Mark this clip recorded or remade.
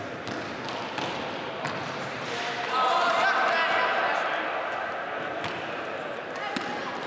recorded